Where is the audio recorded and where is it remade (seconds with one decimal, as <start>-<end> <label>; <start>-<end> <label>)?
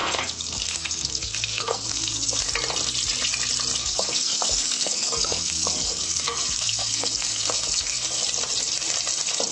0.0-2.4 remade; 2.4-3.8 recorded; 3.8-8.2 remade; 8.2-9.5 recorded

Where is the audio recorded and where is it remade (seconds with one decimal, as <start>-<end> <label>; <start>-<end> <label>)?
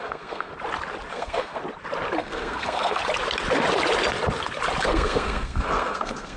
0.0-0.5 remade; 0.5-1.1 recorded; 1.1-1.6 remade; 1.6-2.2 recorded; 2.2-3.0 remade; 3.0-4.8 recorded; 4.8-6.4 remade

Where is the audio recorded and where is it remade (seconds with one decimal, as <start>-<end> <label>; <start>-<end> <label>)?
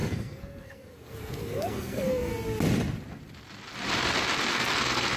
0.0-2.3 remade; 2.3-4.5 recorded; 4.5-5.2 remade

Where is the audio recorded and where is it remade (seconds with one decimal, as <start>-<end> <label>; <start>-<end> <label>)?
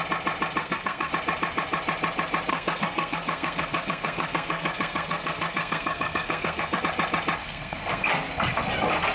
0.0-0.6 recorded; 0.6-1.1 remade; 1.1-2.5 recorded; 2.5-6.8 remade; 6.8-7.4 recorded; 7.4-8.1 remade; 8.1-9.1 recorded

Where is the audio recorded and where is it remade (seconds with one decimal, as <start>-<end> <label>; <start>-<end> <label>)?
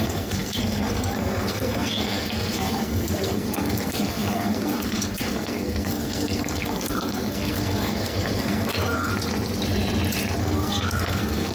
0.0-9.1 remade; 9.1-10.4 recorded; 10.4-11.5 remade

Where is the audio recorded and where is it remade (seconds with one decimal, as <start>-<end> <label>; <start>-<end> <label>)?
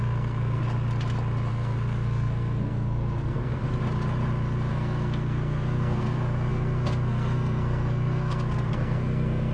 0.0-0.6 remade; 0.6-1.5 recorded; 1.5-3.6 remade; 3.6-4.7 recorded; 4.7-9.5 remade